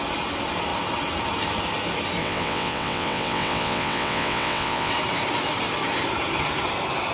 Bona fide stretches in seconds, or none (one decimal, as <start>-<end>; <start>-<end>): 0.0-2.2; 4.9-7.1